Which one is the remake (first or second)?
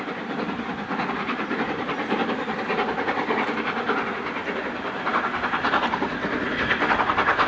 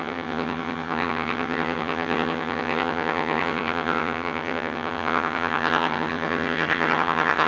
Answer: second